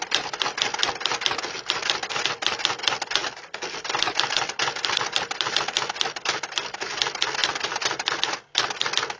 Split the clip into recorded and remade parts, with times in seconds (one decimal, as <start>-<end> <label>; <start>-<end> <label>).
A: 0.0-3.2 recorded; 3.2-5.6 remade; 5.6-9.2 recorded